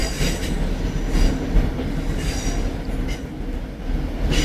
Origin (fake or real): real